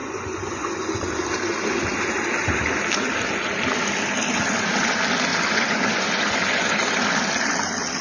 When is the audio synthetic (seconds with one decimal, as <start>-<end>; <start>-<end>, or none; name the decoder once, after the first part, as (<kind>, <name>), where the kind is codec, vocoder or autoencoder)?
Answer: 0.0-0.9 (vocoder, Vocos); 5.3-6.7